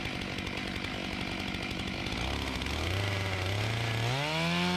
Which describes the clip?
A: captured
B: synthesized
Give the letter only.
A